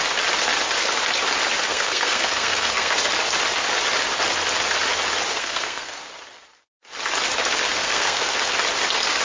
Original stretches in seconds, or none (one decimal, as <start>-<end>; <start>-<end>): 0.0-1.7; 2.9-5.3; 6.1-7.8; 8.5-9.2